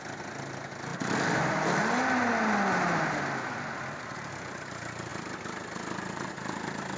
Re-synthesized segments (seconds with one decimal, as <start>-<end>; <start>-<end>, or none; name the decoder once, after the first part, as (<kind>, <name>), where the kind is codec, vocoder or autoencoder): none